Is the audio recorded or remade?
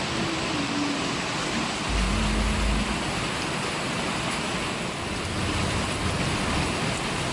recorded